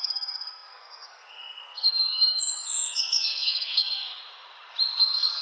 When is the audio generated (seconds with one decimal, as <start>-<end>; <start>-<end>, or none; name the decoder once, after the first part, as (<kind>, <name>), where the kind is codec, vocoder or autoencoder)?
0.0-4.2 (codec, SNAC); 5.0-5.4

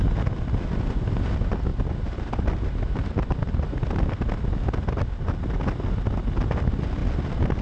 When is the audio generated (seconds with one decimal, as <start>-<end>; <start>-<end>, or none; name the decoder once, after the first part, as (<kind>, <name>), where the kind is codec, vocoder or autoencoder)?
none

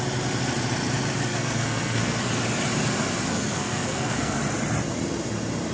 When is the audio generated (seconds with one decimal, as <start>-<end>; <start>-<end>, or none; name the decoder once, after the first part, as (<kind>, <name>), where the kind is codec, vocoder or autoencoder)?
1.3-2.2 (codec, SNAC); 3.3-4.4